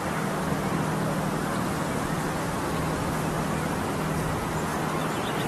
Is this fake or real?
real